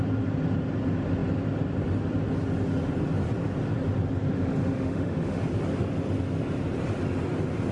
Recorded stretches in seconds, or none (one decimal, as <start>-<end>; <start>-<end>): 0.0-4.3; 5.4-7.7